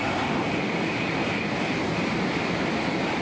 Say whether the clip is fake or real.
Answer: real